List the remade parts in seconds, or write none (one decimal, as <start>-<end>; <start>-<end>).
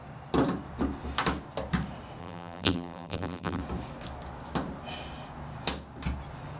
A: 2.2-3.6